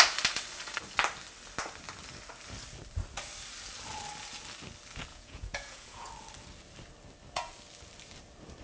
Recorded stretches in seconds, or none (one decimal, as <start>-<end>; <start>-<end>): 0.0-5.1; 6.1-8.6